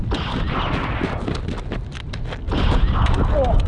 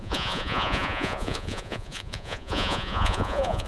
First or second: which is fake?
second